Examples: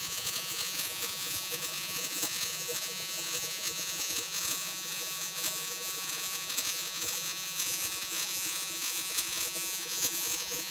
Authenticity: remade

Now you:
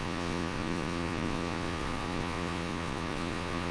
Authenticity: remade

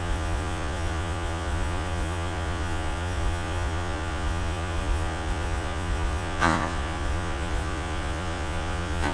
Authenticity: remade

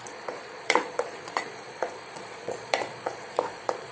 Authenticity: remade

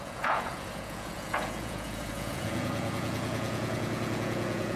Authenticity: remade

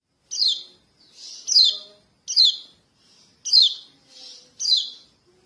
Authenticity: recorded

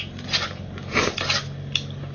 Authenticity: recorded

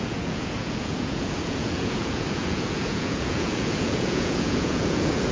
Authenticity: remade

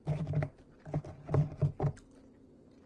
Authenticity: recorded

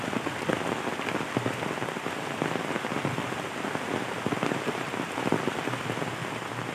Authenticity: recorded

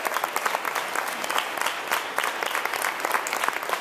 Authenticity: recorded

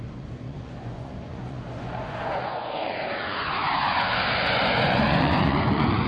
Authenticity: remade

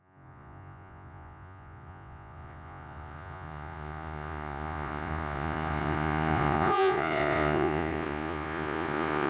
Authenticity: remade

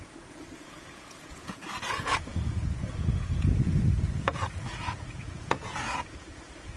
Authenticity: remade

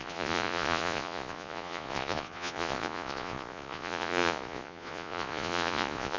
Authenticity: remade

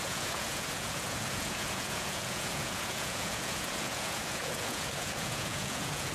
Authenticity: remade